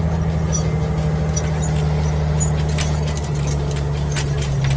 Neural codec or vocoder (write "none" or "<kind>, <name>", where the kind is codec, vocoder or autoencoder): none